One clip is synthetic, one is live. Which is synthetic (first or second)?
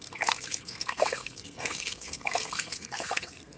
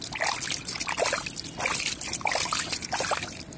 first